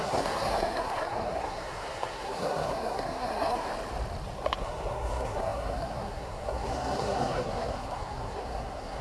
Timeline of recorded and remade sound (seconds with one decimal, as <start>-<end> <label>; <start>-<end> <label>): 0.0-3.7 remade; 3.7-4.6 recorded; 4.6-9.0 remade